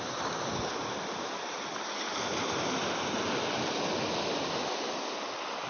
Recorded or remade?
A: recorded